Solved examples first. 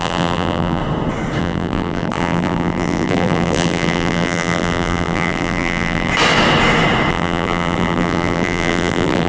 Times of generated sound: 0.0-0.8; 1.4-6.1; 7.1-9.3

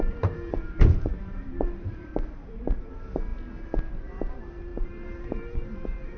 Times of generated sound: 0.0-2.1; 2.9-3.3; 3.9-6.2

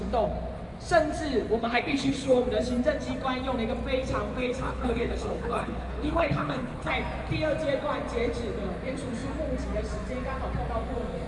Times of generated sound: 1.6-2.4; 4.4-6.9